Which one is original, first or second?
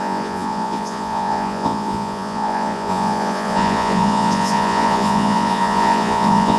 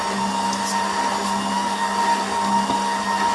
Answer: second